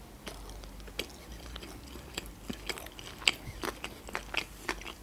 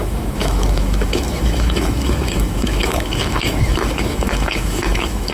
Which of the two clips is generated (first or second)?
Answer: second